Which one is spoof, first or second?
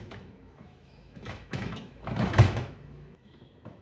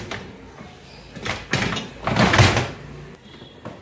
first